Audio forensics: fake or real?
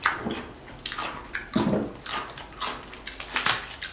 real